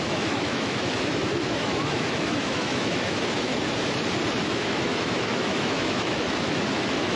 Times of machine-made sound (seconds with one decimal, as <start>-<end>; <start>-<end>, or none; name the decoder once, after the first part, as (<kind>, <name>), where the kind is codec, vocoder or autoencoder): 0.0-3.5 (autoencoder, DAC-VAE); 4.4-7.2

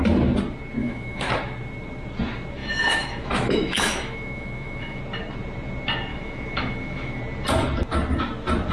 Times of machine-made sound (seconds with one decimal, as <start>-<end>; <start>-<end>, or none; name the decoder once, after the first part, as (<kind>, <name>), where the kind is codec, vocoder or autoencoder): 0.8-1.3 (autoencoder, DAC-VAE); 2.6-5.0; 6.1-7.2

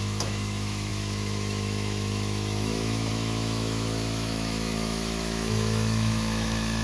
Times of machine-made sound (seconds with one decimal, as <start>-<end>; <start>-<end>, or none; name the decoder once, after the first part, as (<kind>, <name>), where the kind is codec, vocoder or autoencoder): 0.0-6.8 (autoencoder, DAC-VAE)

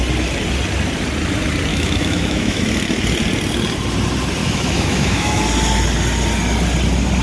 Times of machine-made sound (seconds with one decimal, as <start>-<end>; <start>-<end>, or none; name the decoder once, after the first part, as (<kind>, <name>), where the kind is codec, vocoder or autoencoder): 1.7-2.6 (autoencoder, DAC-VAE); 4.4-5.4